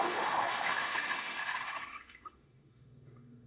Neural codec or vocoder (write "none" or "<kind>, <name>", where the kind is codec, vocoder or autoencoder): autoencoder, DAC-VAE